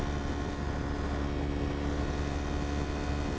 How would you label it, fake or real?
real